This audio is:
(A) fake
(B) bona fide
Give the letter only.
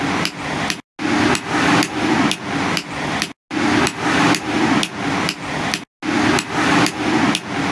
B